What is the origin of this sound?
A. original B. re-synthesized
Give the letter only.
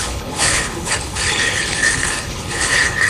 B